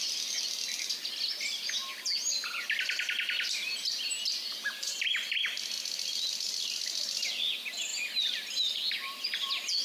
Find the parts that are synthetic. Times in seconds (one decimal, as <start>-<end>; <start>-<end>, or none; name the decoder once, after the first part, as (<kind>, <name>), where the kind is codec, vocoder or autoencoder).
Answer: none